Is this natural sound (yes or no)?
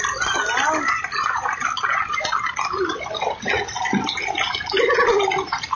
yes